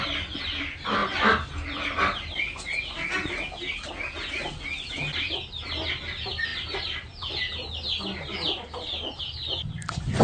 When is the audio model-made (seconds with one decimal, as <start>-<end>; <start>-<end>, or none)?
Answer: none

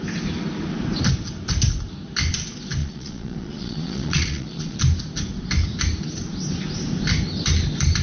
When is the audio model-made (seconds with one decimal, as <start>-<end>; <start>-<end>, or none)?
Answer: 2.8-4.8

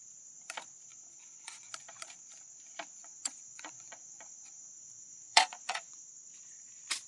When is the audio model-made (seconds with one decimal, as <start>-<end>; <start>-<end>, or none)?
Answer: 0.9-1.7; 3.0-6.1

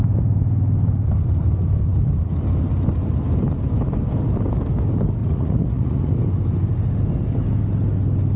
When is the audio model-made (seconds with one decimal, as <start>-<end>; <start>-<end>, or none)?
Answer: 5.2-6.1

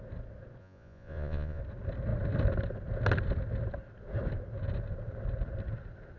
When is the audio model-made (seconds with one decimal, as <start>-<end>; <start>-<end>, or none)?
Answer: 0.6-1.6

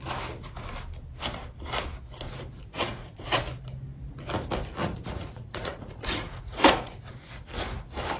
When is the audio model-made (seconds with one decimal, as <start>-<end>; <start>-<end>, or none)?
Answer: 2.7-3.4; 4.8-7.1

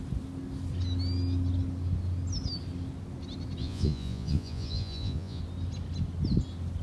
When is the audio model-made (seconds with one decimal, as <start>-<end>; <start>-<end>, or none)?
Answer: 3.6-5.4

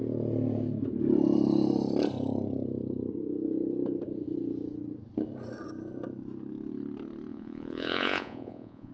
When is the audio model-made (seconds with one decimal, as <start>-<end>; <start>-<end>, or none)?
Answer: 7.3-8.9